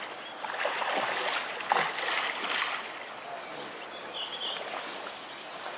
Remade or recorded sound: recorded